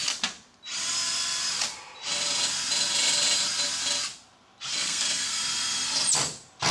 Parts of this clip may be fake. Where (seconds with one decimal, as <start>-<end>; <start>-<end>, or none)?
4.7-5.4